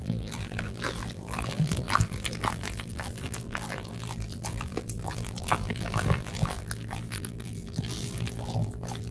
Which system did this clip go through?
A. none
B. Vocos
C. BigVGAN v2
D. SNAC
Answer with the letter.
C